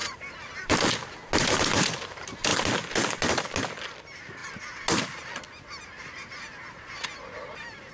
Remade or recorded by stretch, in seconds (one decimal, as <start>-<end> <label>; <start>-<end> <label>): 0.0-0.9 remade; 0.9-7.9 recorded